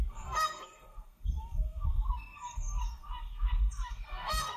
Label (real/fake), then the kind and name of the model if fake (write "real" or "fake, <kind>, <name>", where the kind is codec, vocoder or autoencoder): fake, codec, SNAC